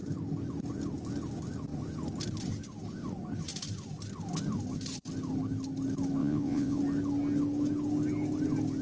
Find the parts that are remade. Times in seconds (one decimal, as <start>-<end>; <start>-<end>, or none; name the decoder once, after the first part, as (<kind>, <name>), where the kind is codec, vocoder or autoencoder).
6.2-6.8 (vocoder, Vocos)